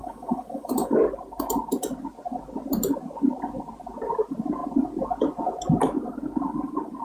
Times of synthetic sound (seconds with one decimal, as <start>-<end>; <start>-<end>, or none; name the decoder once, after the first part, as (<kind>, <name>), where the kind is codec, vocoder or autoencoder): 0.0-1.0 (autoencoder, DAC-VAE)